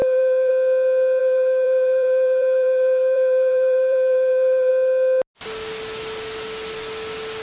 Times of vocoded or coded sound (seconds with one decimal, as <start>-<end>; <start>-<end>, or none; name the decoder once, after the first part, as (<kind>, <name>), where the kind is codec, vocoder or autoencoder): 0.0-0.5 (vocoder, BigVGAN v2); 1.2-4.7